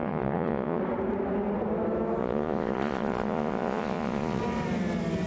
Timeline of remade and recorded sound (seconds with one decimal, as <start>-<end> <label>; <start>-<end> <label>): 0.0-0.8 remade; 0.8-2.2 recorded; 2.2-4.4 remade; 4.4-5.3 recorded